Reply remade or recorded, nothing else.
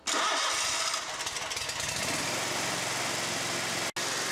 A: recorded